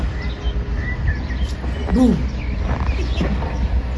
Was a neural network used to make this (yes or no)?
no